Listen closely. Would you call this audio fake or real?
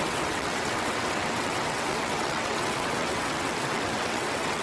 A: fake